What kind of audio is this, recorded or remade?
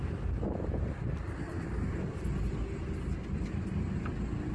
recorded